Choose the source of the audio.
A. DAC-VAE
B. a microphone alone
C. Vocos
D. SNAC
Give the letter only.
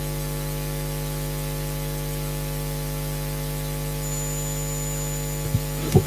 B